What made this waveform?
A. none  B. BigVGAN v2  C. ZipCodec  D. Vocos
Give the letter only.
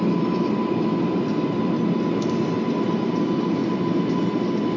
A